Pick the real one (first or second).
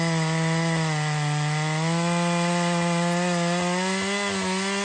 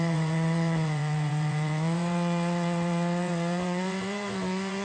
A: first